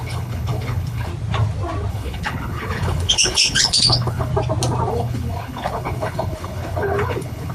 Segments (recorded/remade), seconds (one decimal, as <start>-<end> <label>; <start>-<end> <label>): 0.0-1.1 remade; 1.1-1.9 recorded; 1.9-4.3 remade; 4.3-4.9 recorded; 4.9-7.5 remade